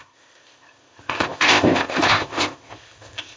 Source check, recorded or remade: remade